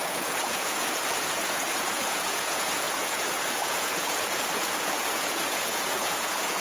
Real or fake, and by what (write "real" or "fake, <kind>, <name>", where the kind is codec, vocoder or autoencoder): fake, vocoder, Vocos